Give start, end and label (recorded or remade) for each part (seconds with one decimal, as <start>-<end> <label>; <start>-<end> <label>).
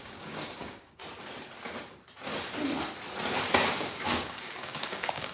0.0-1.0 remade; 1.0-3.7 recorded; 3.7-5.3 remade